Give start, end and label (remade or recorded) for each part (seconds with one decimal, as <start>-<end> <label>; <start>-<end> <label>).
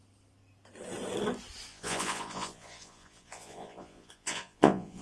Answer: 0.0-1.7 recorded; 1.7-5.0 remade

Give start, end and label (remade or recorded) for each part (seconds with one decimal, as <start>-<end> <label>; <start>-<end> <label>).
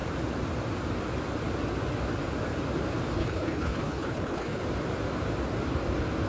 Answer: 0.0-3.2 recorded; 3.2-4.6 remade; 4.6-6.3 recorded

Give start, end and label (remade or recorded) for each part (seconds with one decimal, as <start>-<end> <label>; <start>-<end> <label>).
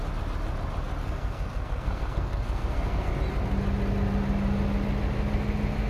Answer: 0.0-1.0 recorded; 1.0-3.1 remade; 3.1-5.9 recorded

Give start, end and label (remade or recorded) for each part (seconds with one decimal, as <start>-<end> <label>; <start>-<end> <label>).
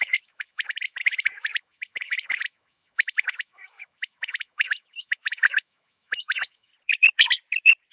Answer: 0.0-6.7 remade; 6.7-7.9 recorded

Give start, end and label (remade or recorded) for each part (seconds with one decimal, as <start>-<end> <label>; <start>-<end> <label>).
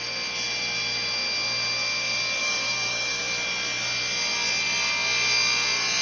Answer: 0.0-2.4 recorded; 2.4-3.2 remade; 3.2-6.0 recorded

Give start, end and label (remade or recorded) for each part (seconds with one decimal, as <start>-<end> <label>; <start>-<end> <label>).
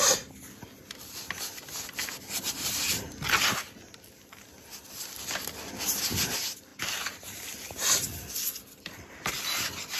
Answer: 0.0-10.0 recorded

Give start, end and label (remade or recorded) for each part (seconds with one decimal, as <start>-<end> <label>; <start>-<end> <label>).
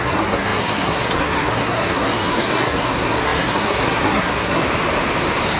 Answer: 0.0-4.6 remade; 4.6-5.6 recorded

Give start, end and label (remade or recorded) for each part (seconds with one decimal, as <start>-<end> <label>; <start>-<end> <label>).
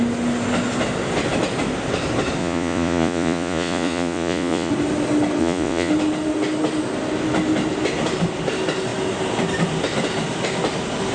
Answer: 0.0-2.4 recorded; 2.4-4.7 remade; 4.7-5.4 recorded; 5.4-5.9 remade; 5.9-11.1 recorded